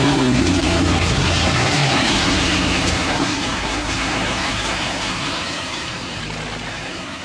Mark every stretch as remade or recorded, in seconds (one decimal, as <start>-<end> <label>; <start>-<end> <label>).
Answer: 0.0-6.2 remade; 6.2-6.7 recorded; 6.7-7.2 remade